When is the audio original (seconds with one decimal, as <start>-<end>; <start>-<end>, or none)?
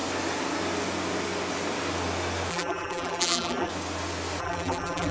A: 0.0-2.5; 3.7-4.4